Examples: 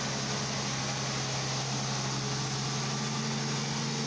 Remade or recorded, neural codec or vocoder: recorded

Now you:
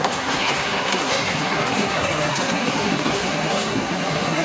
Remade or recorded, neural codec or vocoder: remade, codec, SNAC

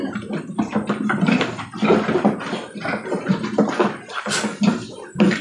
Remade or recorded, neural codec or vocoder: recorded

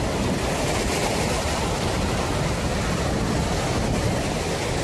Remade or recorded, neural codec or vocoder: recorded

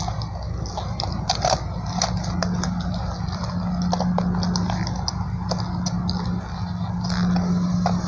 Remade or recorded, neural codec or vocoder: recorded